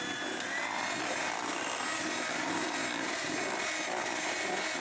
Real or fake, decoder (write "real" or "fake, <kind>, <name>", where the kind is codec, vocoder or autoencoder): real